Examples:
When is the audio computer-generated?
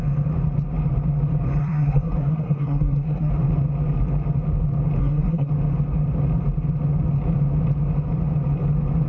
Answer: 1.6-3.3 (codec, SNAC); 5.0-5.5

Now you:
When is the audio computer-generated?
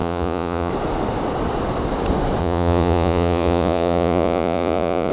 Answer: 0.0-0.7 (vocoder, Vocos); 2.4-5.1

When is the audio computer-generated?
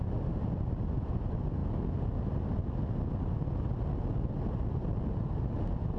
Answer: none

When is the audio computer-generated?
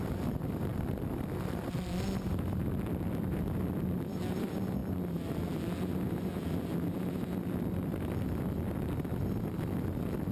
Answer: 0.7-1.7 (vocoder, BigVGAN v2)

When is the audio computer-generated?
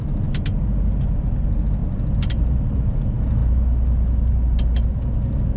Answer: 1.8-2.6 (vocoder, BigVGAN v2)